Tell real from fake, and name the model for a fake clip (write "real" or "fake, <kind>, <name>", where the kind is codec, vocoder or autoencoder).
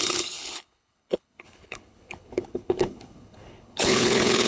fake, codec, HILCodec